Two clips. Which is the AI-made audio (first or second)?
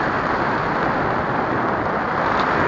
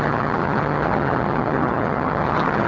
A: second